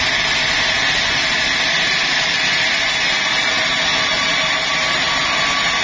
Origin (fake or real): real